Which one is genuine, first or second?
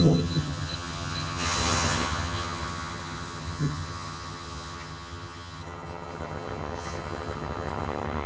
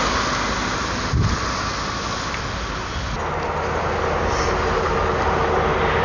second